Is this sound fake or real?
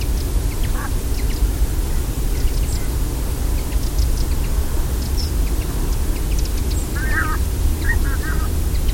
real